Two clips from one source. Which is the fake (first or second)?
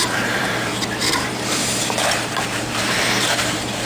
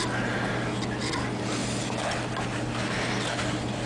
first